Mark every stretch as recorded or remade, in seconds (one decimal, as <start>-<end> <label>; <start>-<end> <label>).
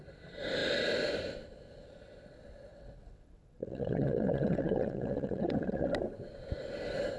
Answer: 0.0-2.7 recorded; 2.7-5.9 remade; 5.9-7.2 recorded